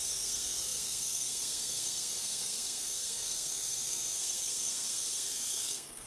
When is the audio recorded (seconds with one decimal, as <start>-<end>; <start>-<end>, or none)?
none